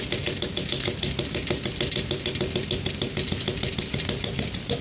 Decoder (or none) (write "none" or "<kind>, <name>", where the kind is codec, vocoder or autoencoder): none